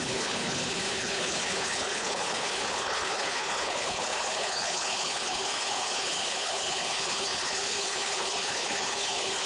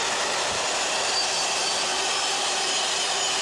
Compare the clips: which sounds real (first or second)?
second